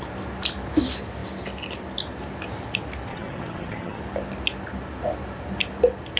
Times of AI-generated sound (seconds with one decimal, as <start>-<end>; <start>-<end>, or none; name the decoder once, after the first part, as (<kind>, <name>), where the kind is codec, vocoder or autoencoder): 3.1-4.0 (vocoder, HiFi-GAN)